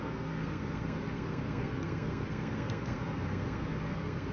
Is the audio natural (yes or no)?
no